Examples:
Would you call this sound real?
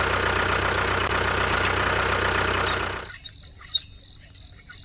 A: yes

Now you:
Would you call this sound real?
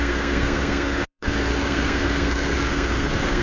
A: no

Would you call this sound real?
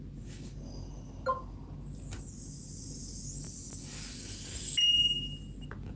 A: yes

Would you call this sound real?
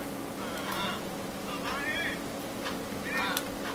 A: yes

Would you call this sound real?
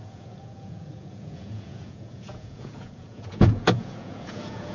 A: no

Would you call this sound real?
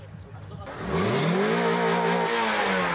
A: yes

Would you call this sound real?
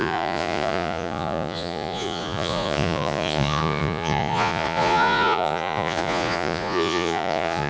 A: no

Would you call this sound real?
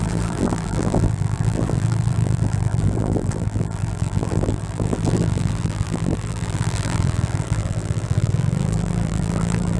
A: no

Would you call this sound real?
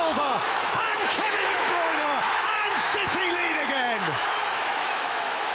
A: no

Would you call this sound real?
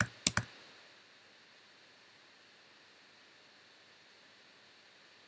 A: yes